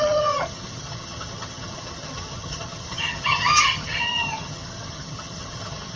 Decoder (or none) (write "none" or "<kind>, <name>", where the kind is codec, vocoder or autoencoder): vocoder, HiFi-GAN